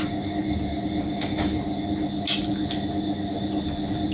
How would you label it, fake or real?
real